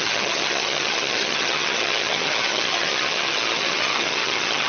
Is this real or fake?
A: fake